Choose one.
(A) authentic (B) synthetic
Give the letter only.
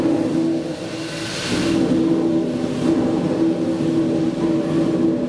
A